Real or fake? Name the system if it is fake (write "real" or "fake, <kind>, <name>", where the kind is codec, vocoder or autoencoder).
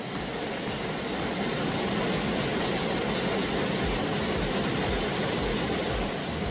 real